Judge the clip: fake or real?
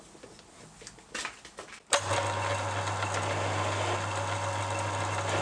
real